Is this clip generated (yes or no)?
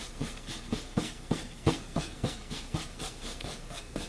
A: yes